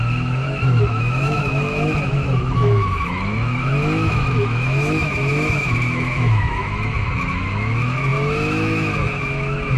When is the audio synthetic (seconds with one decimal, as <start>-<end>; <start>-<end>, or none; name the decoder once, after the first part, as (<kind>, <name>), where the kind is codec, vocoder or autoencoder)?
0.0-9.8 (autoencoder, DAC-VAE)